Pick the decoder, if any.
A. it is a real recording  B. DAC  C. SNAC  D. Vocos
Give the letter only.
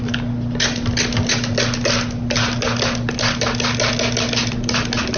A